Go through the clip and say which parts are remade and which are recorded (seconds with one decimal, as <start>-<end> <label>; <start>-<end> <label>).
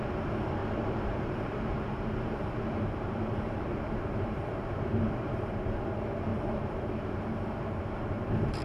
0.0-0.6 recorded; 0.6-5.6 remade; 5.6-6.3 recorded; 6.3-8.6 remade